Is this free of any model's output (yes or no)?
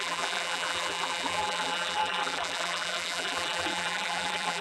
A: no